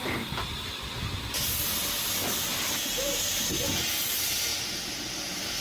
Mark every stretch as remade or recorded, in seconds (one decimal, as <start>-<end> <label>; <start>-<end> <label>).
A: 0.0-2.5 remade; 2.5-4.1 recorded; 4.1-4.5 remade; 4.5-5.6 recorded